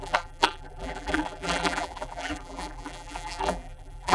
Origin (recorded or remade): remade